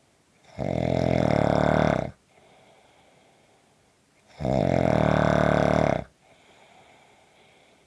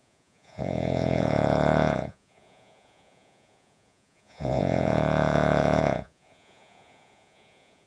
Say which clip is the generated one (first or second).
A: second